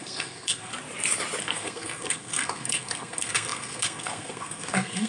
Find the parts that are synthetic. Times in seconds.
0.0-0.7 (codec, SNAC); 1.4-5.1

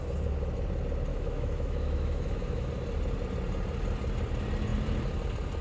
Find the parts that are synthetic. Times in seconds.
1.1-2.7 (autoencoder, DAC-VAE)

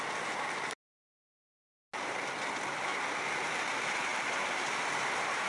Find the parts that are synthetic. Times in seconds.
none

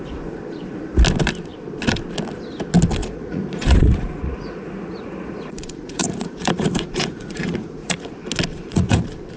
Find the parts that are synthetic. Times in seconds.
3.0-8.1 (vocoder, Vocos); 8.5-9.0

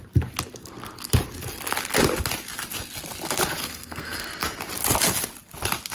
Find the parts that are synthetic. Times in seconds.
3.6-4.2 (codec, SNAC)